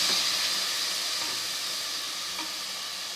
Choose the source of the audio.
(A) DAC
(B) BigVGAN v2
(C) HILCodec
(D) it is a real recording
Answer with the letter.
D